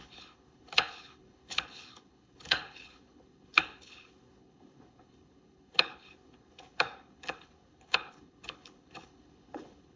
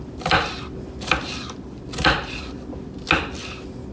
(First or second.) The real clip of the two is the second